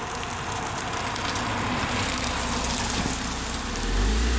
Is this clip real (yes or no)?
yes